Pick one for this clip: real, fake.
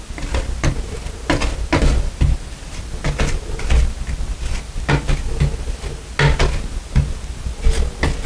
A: real